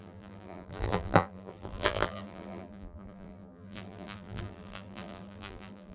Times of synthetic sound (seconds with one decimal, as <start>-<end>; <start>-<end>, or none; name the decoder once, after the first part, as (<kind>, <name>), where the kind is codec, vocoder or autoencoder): 0.0-5.9 (vocoder, BigVGAN v2)

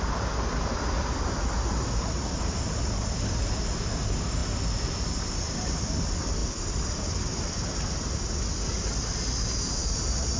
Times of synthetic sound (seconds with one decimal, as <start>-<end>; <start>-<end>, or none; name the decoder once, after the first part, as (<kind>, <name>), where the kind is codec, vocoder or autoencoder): none

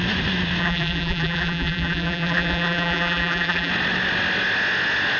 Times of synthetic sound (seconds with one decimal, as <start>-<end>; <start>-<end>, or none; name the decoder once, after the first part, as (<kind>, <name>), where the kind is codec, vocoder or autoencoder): 0.6-3.7 (vocoder, BigVGAN v2)